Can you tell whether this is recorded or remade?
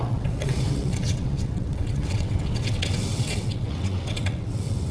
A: remade